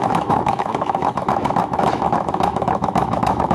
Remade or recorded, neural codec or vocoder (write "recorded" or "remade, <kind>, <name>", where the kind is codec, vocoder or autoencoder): remade, autoencoder, DAC-VAE